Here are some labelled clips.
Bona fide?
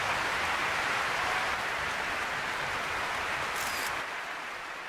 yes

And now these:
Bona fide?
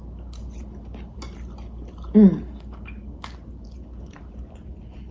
yes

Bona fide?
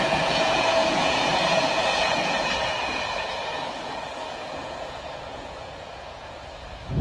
no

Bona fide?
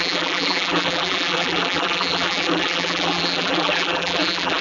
no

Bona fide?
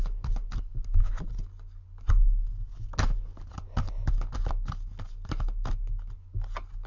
yes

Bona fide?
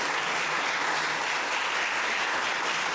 yes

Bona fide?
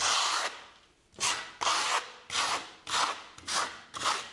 yes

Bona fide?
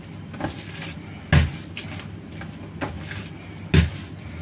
yes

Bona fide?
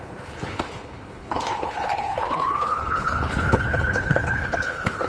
no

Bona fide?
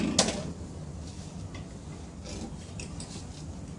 yes